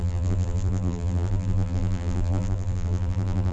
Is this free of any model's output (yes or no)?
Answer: no